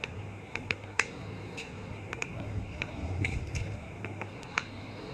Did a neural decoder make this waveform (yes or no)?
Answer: yes